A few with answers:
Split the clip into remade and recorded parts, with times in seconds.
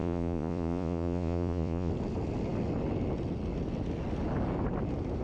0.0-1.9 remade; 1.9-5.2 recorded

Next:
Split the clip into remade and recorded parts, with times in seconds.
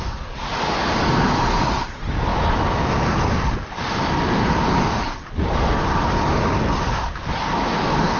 0.0-8.2 recorded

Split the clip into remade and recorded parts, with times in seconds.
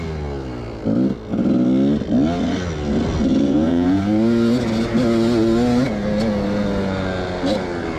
0.0-3.3 recorded; 3.3-4.0 remade; 4.0-8.0 recorded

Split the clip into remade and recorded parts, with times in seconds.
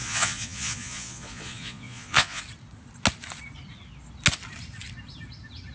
0.0-2.4 remade; 2.4-5.7 recorded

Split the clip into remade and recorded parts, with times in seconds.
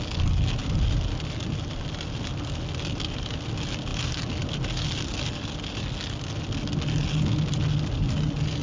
0.0-8.6 recorded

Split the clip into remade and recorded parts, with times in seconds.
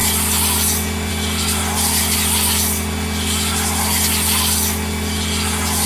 0.0-5.9 recorded